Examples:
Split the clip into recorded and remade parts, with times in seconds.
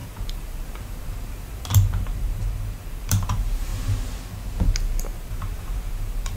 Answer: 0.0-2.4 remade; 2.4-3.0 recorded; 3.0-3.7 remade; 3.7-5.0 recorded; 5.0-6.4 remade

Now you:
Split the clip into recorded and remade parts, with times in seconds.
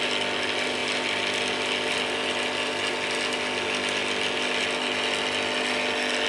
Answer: 0.0-6.3 recorded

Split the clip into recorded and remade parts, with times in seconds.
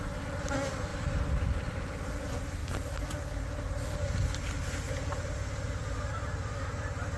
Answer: 0.0-7.2 recorded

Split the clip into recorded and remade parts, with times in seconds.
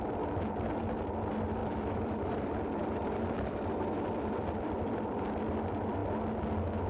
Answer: 0.0-1.6 recorded; 1.6-5.2 remade; 5.2-6.9 recorded